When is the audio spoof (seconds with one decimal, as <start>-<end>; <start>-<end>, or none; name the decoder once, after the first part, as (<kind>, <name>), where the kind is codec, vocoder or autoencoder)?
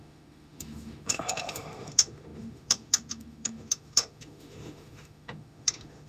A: 0.0-6.1 (autoencoder, DAC-VAE)